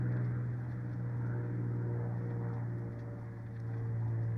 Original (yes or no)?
yes